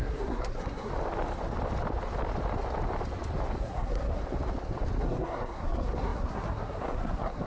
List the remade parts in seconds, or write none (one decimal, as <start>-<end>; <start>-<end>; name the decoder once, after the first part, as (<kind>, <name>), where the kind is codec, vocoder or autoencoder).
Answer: 0.0-0.9 (codec, SNAC); 3.6-4.2; 5.0-7.5